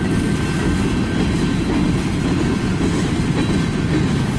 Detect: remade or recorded recorded